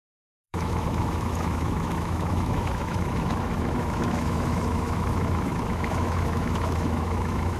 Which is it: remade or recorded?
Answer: remade